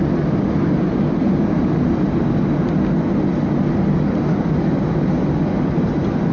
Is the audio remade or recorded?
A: recorded